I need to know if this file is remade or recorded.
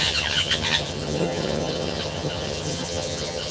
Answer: remade